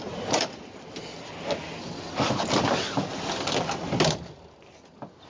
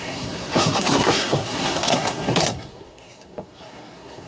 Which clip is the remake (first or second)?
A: second